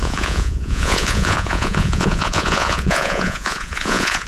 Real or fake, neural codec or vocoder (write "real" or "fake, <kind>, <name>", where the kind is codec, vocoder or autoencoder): fake, vocoder, Vocos